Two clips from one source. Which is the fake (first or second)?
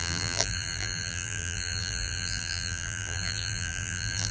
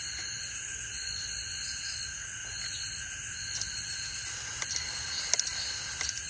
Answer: first